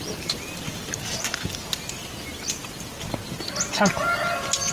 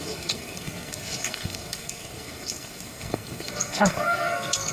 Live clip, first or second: first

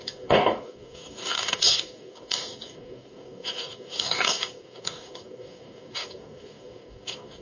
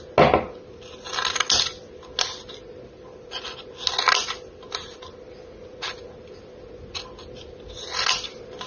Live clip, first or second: second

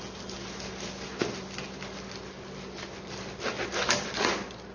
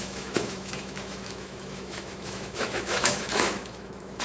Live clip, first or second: first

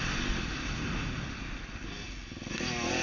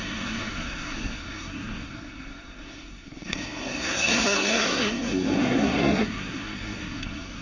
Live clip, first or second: first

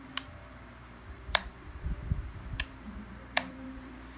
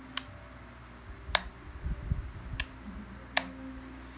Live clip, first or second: second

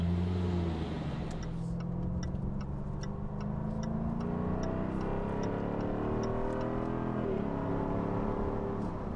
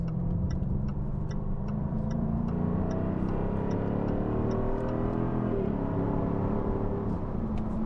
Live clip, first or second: first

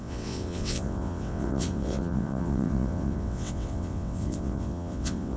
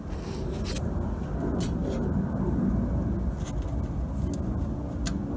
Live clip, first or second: second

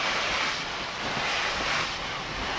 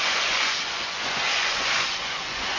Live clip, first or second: first